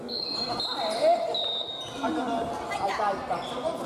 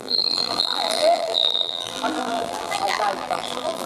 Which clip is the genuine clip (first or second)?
first